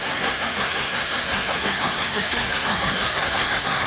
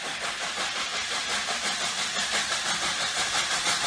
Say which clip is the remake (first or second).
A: first